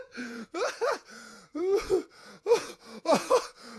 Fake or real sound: fake